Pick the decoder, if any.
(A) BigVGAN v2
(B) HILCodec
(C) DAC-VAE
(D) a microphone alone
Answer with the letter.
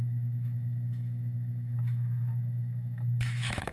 C